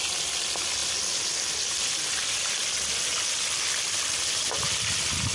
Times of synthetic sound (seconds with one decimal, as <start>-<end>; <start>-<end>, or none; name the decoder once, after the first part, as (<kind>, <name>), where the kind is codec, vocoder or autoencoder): none